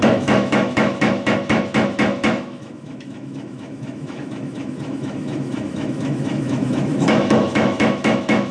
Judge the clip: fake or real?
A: fake